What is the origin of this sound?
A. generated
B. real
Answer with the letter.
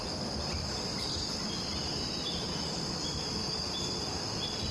B